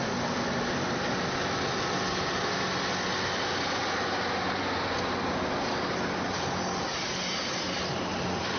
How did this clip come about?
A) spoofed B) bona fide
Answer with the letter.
B